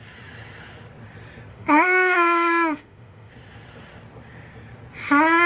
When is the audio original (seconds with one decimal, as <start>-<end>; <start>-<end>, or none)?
0.0-1.5; 3.3-5.5